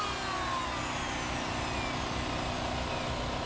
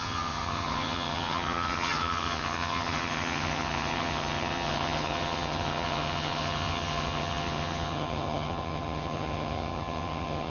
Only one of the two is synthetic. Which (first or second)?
second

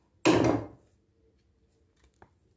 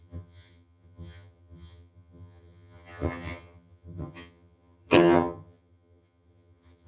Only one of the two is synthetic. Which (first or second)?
second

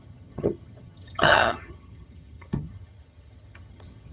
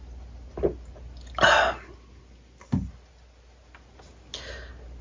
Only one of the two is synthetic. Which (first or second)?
first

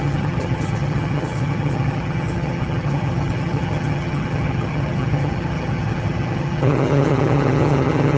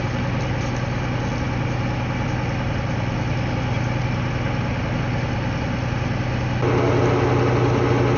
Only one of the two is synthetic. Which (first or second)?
first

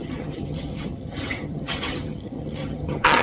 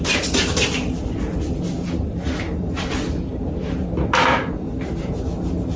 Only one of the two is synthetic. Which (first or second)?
first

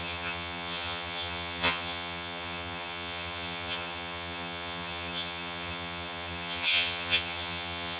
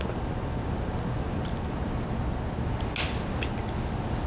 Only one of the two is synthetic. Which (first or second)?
first